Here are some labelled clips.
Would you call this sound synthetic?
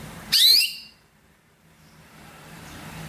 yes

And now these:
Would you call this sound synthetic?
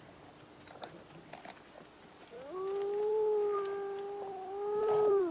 yes